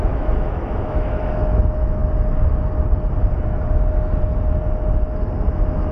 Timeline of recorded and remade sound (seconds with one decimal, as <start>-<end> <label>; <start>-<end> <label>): 0.0-2.0 remade; 2.0-5.5 recorded; 5.5-5.9 remade